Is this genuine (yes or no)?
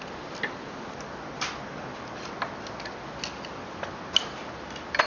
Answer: yes